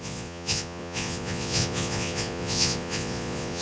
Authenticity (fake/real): fake